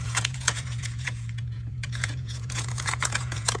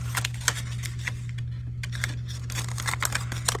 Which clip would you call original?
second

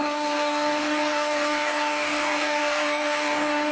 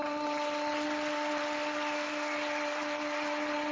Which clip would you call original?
second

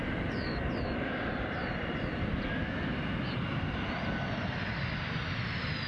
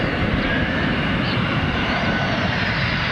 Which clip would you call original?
first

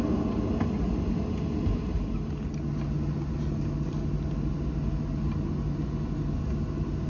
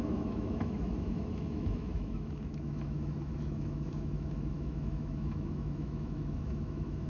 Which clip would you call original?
first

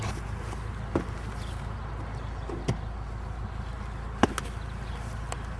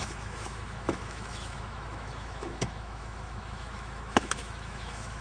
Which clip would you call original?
first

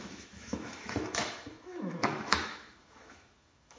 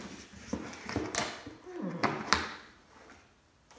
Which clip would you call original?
second